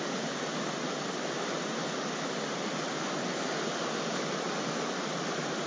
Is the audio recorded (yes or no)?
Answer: yes